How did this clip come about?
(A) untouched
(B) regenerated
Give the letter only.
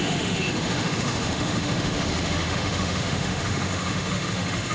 B